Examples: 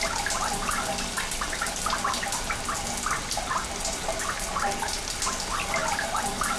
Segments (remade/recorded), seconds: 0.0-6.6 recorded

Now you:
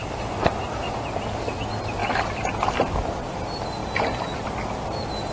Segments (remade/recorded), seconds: 0.0-5.3 recorded

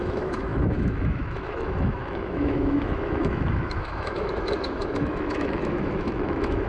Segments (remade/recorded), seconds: 0.0-6.7 remade

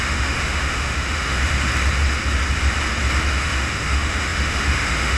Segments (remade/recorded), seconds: 0.0-1.7 remade; 1.7-3.3 recorded; 3.3-5.2 remade

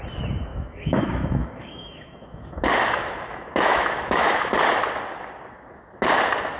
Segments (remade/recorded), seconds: 0.0-0.5 recorded; 0.5-4.5 remade; 4.5-6.6 recorded

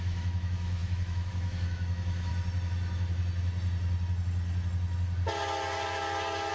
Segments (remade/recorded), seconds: 0.0-2.3 remade; 2.3-6.5 recorded

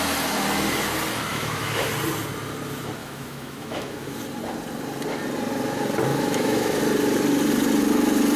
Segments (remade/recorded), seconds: 0.0-1.3 recorded; 1.3-1.9 remade; 1.9-3.0 recorded; 3.0-4.2 remade; 4.2-6.1 recorded; 6.1-6.8 remade; 6.8-8.4 recorded